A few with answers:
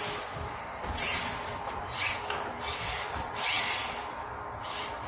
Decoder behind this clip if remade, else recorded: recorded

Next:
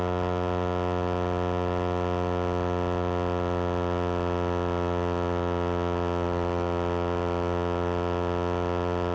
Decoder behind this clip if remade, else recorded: recorded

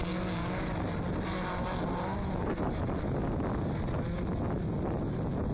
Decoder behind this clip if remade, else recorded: recorded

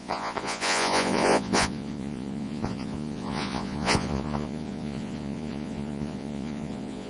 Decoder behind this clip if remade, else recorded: remade, vocoder, Vocos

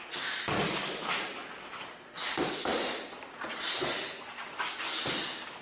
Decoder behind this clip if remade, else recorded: recorded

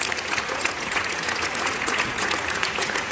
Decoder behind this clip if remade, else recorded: remade, vocoder, Vocos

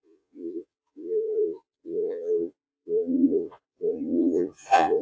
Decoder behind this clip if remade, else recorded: remade, vocoder, Vocos